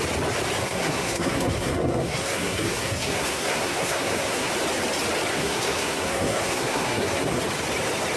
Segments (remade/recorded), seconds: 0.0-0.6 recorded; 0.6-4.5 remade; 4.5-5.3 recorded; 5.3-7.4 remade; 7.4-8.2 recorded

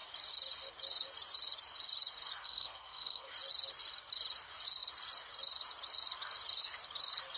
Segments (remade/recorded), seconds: 0.0-2.4 recorded; 2.4-3.3 remade; 3.3-7.4 recorded

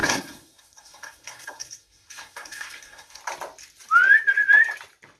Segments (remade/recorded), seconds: 0.0-3.2 remade; 3.2-5.2 recorded

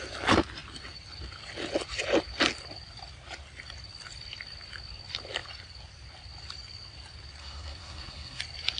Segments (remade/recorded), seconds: 0.0-7.4 recorded; 7.4-8.4 remade; 8.4-8.8 recorded

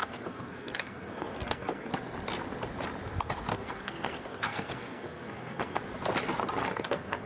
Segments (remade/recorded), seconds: 0.0-1.9 remade; 1.9-3.5 recorded; 3.5-5.8 remade; 5.8-6.6 recorded; 6.6-7.3 remade

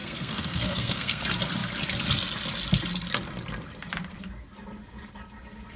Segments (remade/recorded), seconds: 0.0-1.2 remade; 1.2-5.8 recorded

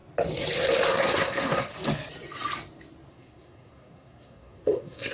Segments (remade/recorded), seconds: 0.0-0.9 recorded; 0.9-1.7 remade; 1.7-3.1 recorded; 3.1-5.1 remade